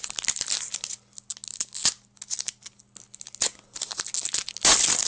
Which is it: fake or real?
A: real